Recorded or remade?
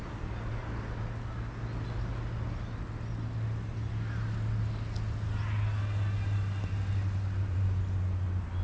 recorded